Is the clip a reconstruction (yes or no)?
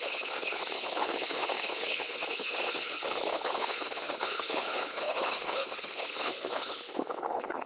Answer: yes